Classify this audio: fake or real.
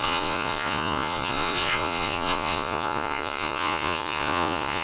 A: fake